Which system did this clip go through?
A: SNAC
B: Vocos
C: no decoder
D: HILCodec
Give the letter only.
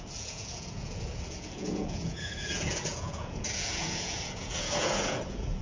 B